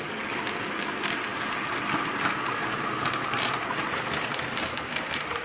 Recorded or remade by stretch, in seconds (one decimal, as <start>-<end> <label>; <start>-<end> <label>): 0.0-5.4 recorded